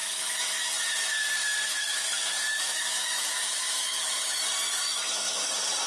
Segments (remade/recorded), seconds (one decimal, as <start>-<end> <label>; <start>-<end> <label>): 0.0-0.7 remade; 0.7-1.7 recorded; 1.7-4.4 remade; 4.4-4.9 recorded; 4.9-5.5 remade; 5.5-5.9 recorded